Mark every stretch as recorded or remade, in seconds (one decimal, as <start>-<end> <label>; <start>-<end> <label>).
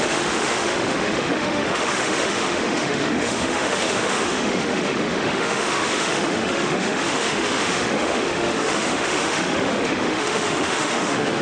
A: 0.0-11.4 remade